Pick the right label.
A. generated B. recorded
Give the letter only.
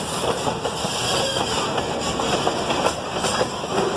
B